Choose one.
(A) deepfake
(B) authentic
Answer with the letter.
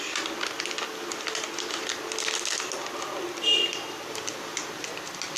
B